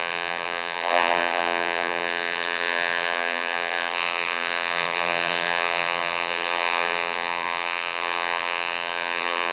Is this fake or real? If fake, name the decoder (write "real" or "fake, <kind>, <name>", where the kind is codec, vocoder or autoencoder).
fake, vocoder, BigVGAN v2